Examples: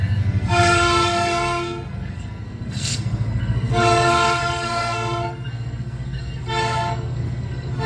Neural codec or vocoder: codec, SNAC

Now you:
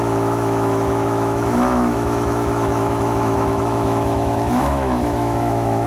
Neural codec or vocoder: autoencoder, DAC-VAE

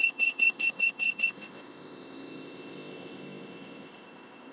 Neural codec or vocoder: codec, ZipCodec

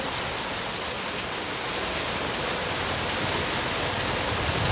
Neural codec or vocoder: none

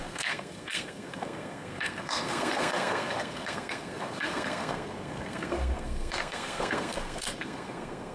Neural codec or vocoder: codec, SNAC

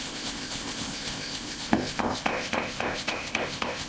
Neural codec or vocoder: codec, ZipCodec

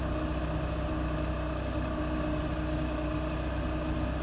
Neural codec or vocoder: none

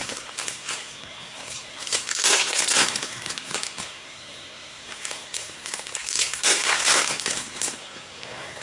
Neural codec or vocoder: codec, SNAC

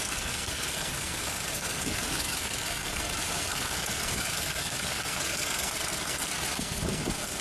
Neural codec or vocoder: codec, SNAC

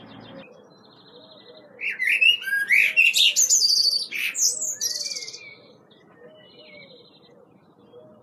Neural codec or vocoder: none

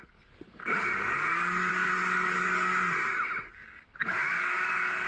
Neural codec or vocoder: codec, DAC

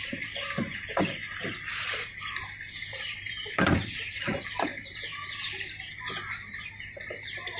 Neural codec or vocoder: vocoder, BigVGAN v2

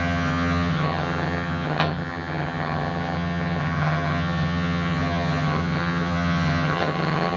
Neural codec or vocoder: vocoder, HiFi-GAN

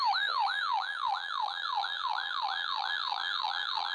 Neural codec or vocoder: vocoder, BigVGAN v2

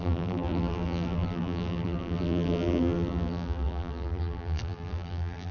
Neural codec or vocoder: vocoder, BigVGAN v2